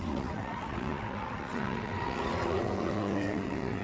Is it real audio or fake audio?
fake